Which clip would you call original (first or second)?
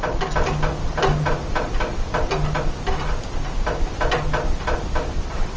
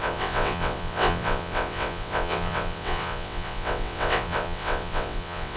first